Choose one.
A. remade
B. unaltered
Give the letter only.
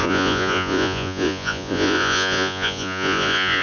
A